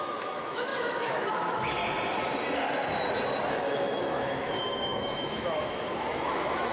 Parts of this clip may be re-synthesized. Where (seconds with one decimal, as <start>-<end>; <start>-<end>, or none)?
0.0-1.8; 3.5-6.7